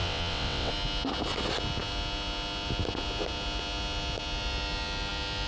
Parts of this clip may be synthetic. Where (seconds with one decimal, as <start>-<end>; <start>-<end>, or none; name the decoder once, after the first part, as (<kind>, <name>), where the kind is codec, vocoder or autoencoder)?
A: 0.0-0.7 (vocoder, WaveNeXt)